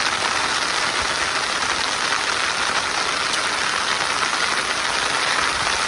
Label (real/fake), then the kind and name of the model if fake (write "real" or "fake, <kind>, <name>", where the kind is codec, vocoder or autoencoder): real